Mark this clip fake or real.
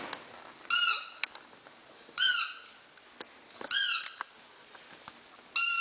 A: real